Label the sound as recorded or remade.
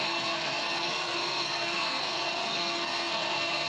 remade